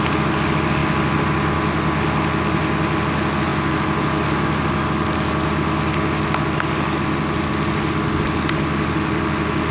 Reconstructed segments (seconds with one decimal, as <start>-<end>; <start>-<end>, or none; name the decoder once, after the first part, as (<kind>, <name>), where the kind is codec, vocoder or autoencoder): none